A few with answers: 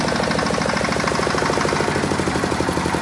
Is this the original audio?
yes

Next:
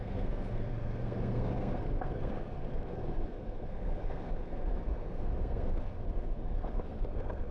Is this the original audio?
no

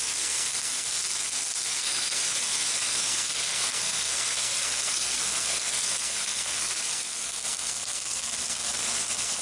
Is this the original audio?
no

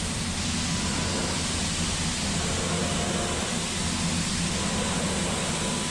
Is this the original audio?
yes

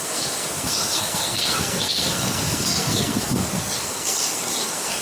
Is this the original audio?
no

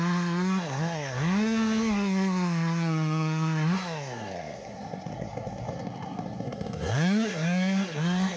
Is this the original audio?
no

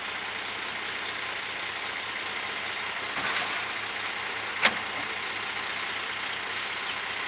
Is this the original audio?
yes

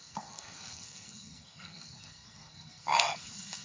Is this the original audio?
no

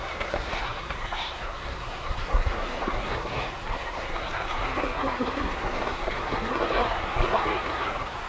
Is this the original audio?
no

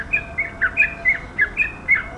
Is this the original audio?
yes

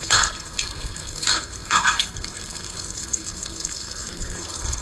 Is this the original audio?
no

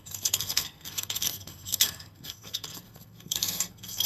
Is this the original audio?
no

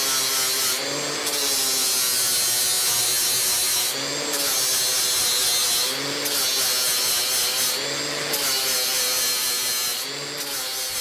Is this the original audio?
yes